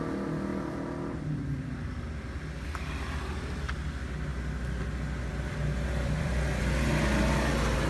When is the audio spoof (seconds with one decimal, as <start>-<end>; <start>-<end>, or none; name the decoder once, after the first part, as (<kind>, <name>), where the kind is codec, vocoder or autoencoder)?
5.3-6.6 (vocoder, BigVGAN v2)